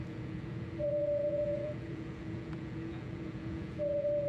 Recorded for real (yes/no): no